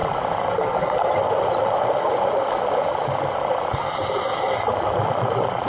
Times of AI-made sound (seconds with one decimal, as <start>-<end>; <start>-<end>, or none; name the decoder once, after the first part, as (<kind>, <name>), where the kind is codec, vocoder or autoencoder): none